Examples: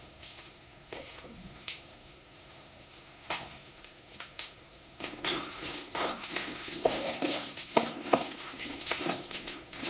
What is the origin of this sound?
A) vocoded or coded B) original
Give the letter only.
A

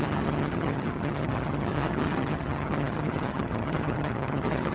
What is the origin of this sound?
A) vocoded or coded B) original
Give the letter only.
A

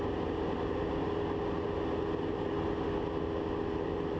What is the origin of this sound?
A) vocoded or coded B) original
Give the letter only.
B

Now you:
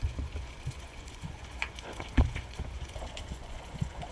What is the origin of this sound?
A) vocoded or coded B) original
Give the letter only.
A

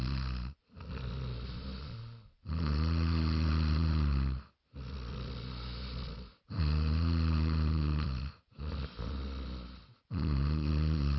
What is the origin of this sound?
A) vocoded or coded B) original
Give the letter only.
B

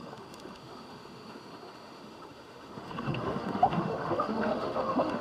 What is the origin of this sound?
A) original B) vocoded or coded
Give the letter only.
B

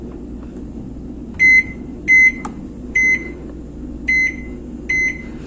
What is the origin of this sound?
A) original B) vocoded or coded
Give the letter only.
A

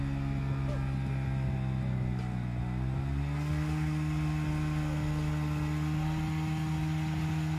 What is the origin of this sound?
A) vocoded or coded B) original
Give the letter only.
B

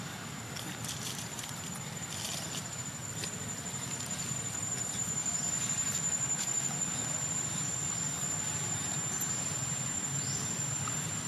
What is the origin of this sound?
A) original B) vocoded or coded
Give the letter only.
B